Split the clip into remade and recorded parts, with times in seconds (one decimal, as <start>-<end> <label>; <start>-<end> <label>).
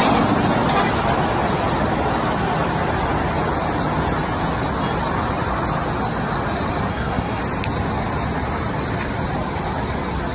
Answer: 0.0-6.9 recorded; 6.9-7.4 remade; 7.4-10.3 recorded